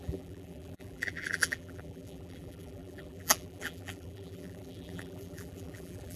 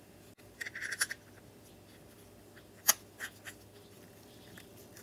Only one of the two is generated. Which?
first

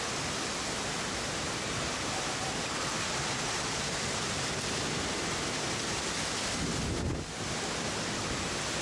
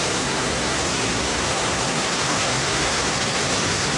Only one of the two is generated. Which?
second